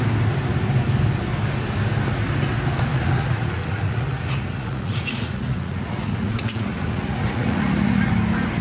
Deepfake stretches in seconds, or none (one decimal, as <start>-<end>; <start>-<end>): 2.9-8.1